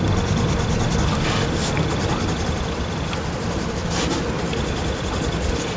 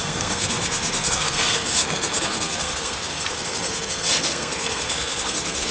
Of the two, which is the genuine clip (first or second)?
first